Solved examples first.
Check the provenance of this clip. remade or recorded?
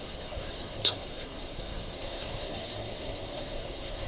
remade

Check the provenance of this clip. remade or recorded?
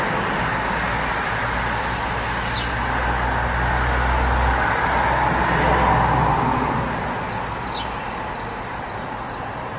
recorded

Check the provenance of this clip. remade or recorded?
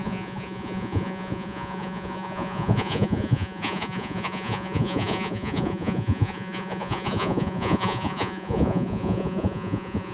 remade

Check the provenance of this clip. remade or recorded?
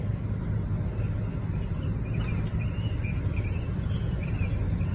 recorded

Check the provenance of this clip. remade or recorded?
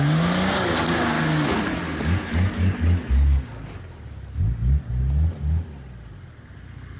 recorded